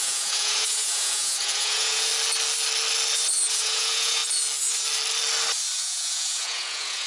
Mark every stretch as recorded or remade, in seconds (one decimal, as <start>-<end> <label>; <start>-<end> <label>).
0.0-2.1 remade; 2.1-3.5 recorded; 3.5-4.2 remade; 4.2-5.8 recorded; 5.8-7.1 remade